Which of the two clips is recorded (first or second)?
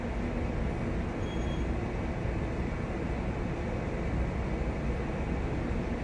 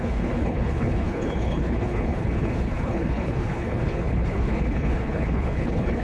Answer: first